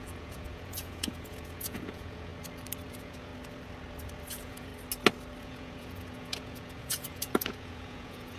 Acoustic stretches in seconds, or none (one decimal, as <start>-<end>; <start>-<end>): 2.3-2.9; 3.3-4.3; 4.7-5.4